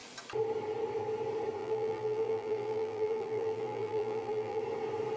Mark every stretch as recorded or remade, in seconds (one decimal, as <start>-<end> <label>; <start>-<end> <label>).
0.0-1.6 recorded; 1.6-4.6 remade; 4.6-5.2 recorded